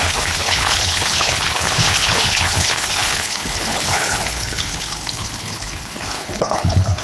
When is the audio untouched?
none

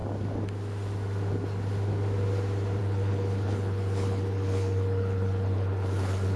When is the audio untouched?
0.0-2.8

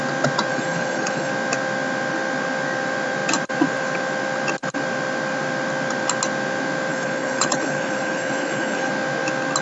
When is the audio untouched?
0.0-0.5; 1.3-6.9; 8.9-9.6

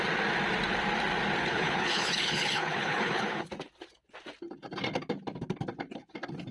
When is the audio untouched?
0.0-1.4; 3.5-6.5

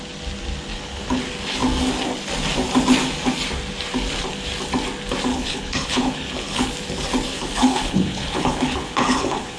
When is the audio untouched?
0.0-0.7; 1.2-5.3; 6.7-7.3

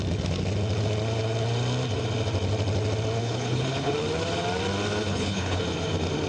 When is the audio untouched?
0.0-3.2; 3.9-5.1; 5.6-6.3